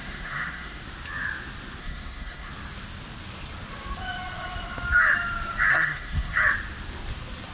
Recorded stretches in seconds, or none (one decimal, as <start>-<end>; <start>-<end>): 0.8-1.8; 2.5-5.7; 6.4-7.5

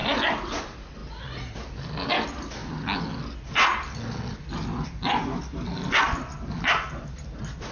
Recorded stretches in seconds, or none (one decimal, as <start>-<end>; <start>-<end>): 0.0-7.7

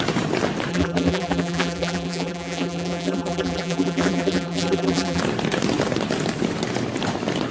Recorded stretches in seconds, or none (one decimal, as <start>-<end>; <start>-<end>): 0.0-0.7; 5.2-7.5

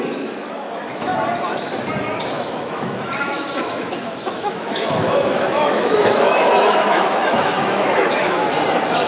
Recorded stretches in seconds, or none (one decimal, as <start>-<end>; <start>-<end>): 1.1-2.3; 8.4-9.1

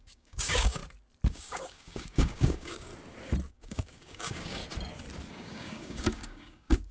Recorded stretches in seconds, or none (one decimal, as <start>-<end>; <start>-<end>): 0.8-1.3; 2.9-3.5; 4.6-5.3